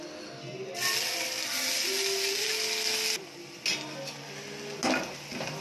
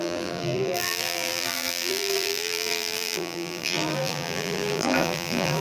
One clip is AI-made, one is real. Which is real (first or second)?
first